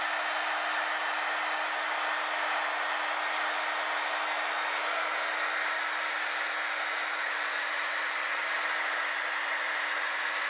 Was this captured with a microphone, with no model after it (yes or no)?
yes